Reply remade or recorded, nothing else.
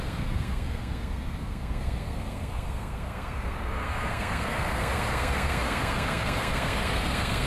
remade